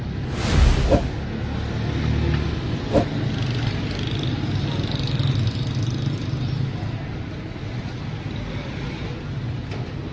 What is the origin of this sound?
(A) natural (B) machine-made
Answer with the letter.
A